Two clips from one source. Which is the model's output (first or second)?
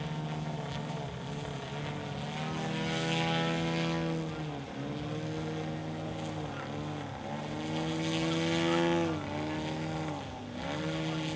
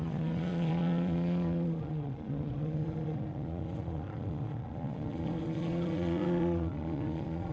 second